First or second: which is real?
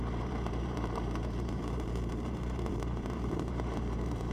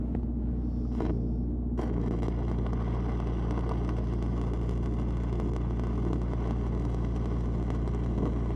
second